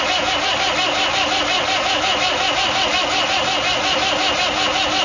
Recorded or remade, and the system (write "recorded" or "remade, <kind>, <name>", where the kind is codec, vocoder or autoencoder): recorded